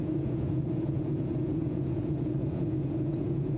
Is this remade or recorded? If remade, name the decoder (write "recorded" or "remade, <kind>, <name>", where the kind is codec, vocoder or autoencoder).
remade, vocoder, Vocos